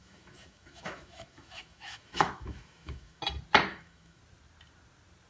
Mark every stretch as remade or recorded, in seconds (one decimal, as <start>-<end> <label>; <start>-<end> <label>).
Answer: 0.0-3.2 remade; 3.2-3.7 recorded; 3.7-4.2 remade; 4.2-5.3 recorded